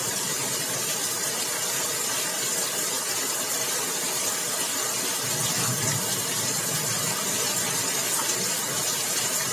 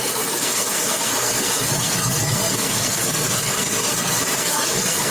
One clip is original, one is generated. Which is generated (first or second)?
second